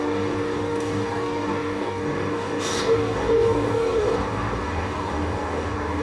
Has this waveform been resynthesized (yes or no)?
yes